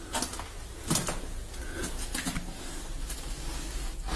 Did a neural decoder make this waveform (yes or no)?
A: no